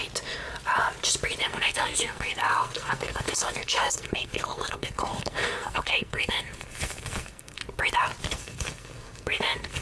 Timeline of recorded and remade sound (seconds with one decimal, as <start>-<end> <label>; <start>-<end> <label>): 0.0-1.4 recorded; 1.4-7.6 remade; 7.6-8.3 recorded; 8.3-9.8 remade